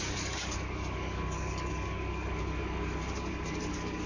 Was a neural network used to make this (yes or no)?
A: yes